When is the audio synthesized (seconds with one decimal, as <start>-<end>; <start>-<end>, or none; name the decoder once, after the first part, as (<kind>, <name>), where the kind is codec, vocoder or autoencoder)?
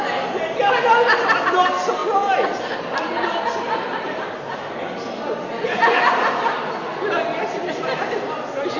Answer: none